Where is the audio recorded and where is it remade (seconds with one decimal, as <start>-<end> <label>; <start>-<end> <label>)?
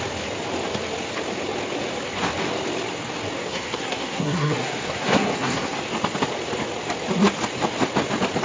0.0-3.5 recorded; 3.5-5.8 remade; 5.8-8.4 recorded